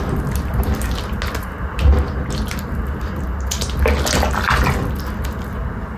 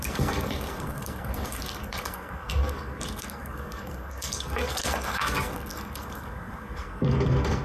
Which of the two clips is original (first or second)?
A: first